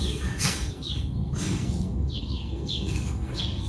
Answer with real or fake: fake